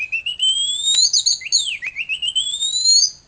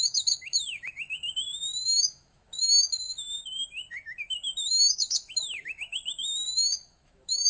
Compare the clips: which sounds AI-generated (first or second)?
second